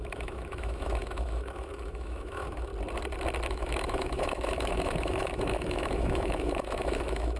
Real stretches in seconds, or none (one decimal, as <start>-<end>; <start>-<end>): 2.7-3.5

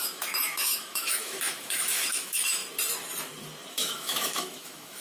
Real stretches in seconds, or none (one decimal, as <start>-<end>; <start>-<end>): 2.6-3.7

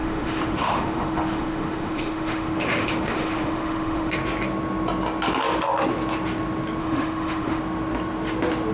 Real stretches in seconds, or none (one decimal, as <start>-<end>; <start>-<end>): 4.1-6.8; 7.6-8.7